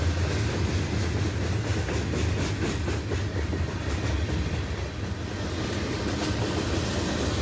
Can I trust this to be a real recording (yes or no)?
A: yes